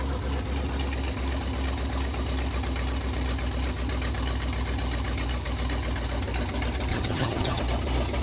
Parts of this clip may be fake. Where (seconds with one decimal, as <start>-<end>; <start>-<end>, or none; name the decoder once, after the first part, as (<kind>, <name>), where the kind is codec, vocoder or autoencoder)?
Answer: 6.9-7.6 (vocoder, HiFi-GAN)